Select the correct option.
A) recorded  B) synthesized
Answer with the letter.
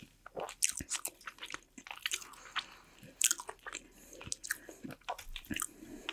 A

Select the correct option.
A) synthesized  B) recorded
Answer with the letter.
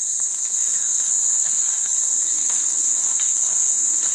A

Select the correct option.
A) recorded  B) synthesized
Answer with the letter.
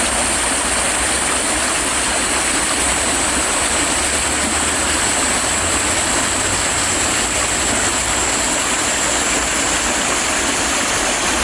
A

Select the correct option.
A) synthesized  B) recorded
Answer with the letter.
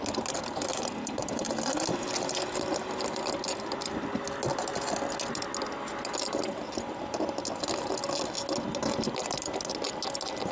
B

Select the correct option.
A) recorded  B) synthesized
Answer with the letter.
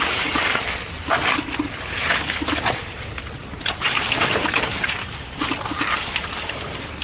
A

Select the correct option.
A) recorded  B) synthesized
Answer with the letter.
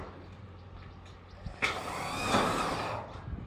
A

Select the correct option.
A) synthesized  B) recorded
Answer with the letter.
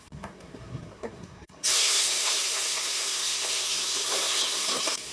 A